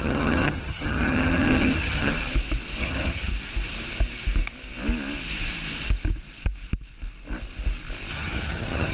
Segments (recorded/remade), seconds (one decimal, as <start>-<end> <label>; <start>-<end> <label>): 0.0-2.1 remade; 2.1-2.8 recorded; 2.8-3.3 remade; 3.3-8.1 recorded; 8.1-8.9 remade